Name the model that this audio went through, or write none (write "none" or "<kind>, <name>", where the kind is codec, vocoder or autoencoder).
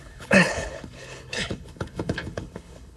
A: codec, HILCodec